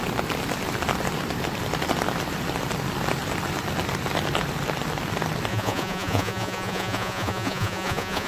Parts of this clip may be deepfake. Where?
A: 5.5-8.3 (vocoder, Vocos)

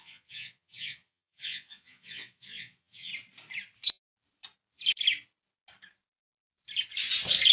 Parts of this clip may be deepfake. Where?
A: 0.0-3.1 (vocoder, Vocos)

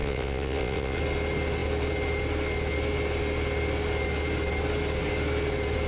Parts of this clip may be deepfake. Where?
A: 0.0-1.0 (vocoder, Vocos)